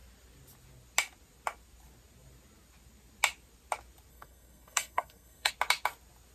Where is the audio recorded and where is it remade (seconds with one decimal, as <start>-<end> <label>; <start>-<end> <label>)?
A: 0.0-4.1 recorded; 4.1-5.5 remade; 5.5-6.3 recorded